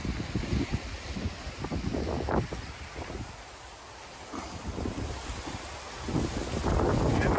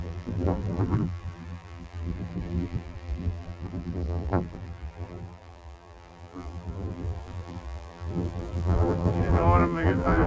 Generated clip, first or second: second